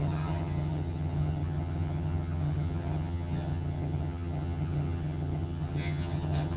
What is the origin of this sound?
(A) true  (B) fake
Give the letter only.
B